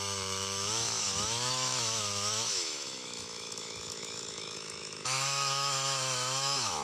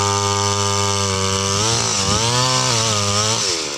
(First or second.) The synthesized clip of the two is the first